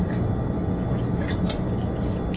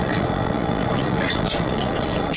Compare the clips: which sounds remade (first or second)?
second